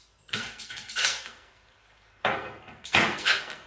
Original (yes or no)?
no